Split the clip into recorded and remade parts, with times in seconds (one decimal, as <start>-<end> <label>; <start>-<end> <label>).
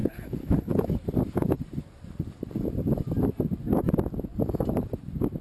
0.0-0.9 remade; 0.9-5.4 recorded